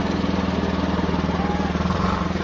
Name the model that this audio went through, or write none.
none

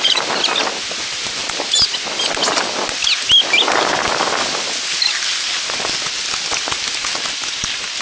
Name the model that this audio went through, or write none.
none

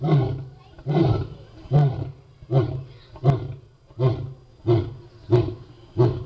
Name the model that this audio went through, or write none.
none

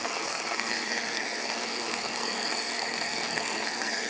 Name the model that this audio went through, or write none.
codec, SNAC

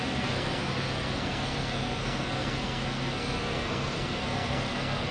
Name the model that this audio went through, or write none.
codec, SNAC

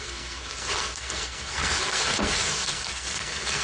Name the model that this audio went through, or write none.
codec, SNAC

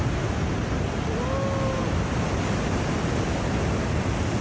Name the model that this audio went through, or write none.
none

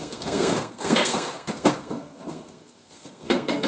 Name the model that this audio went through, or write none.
codec, SNAC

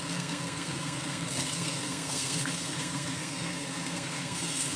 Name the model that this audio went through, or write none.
codec, SNAC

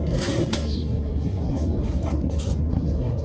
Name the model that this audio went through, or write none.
codec, SNAC